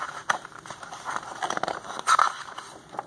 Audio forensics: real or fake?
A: real